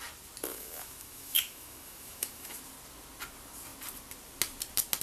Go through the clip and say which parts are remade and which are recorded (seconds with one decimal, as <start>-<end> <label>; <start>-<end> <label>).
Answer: 0.0-0.5 recorded; 0.5-2.6 remade; 2.6-5.0 recorded